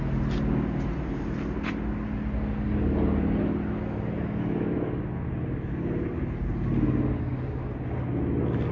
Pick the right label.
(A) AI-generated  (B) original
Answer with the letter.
B